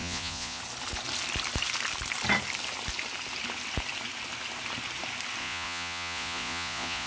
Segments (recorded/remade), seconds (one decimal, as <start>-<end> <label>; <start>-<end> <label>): 0.0-0.6 remade; 0.6-5.4 recorded; 5.4-7.1 remade